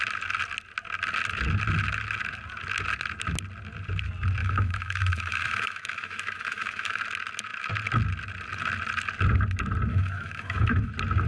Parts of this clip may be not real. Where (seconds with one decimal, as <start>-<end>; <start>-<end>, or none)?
4.4-7.0; 9.9-10.9